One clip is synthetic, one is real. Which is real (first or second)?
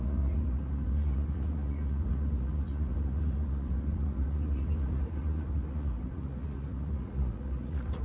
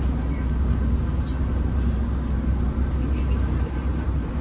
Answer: second